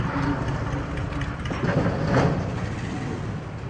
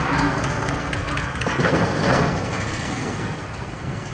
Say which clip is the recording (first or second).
first